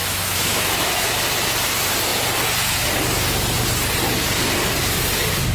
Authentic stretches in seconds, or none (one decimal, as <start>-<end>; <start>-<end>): 1.2-5.5